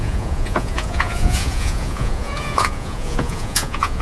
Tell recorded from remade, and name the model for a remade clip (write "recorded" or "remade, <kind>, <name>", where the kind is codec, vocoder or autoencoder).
remade, vocoder, Vocos